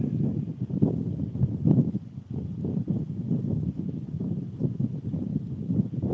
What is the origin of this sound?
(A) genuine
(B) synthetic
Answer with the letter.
A